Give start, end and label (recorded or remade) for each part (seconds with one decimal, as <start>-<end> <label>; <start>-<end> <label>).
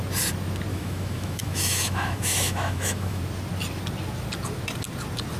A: 0.0-0.7 recorded; 0.7-3.2 remade; 3.2-5.4 recorded